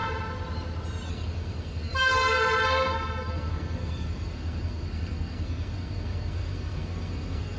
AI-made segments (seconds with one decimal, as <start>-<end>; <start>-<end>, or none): 1.1-7.6